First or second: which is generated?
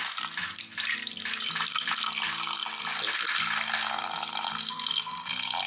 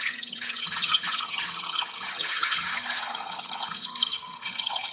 second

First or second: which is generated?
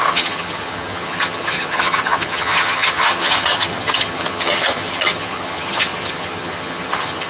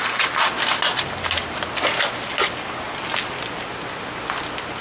first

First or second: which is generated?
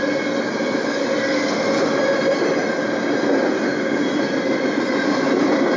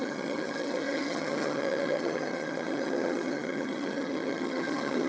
second